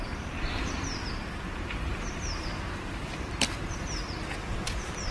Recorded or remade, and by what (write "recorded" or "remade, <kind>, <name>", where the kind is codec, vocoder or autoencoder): remade, vocoder, BigVGAN v2